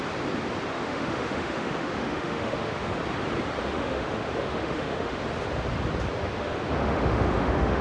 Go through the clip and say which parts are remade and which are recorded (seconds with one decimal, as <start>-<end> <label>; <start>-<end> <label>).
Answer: 0.0-0.7 recorded; 0.7-2.9 remade; 2.9-3.6 recorded; 3.6-5.2 remade; 5.2-6.2 recorded; 6.2-7.8 remade